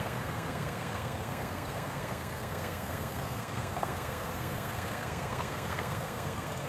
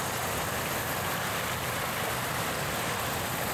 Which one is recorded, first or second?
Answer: second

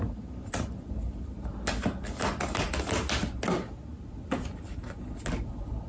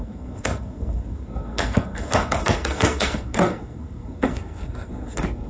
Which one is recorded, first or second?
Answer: first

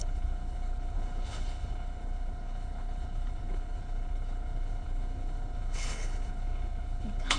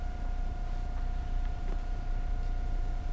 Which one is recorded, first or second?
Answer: second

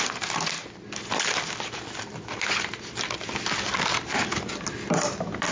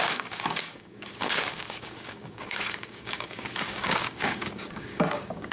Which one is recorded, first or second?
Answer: first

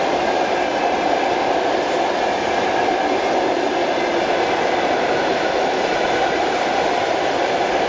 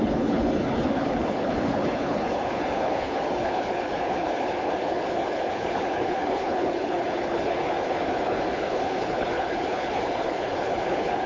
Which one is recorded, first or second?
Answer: first